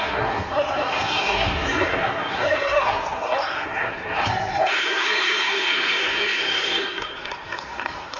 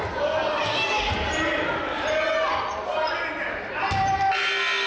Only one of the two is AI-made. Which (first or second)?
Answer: first